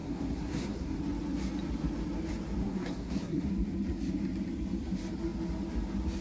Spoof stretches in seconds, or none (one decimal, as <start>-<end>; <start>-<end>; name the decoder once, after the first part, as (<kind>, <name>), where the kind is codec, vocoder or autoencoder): 0.0-1.0 (codec, SNAC); 2.6-3.5